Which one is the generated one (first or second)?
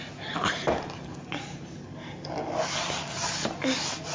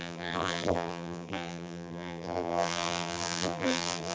second